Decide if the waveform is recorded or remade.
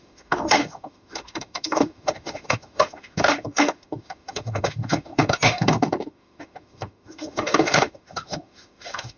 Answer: remade